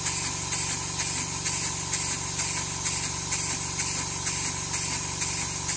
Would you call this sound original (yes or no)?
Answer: yes